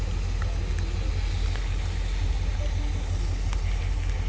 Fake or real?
real